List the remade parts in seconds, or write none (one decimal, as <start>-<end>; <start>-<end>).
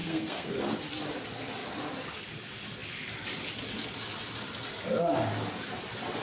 0.0-0.6